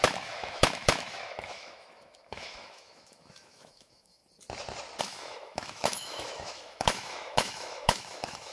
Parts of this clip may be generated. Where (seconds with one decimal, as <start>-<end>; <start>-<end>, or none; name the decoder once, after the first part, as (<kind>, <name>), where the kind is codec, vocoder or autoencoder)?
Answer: 0.0-4.2 (autoencoder, DAC-VAE); 5.0-8.5